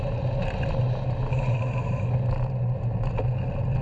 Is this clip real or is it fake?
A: real